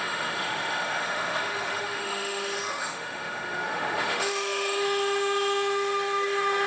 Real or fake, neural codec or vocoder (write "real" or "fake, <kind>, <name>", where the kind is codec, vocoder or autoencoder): fake, autoencoder, DAC-VAE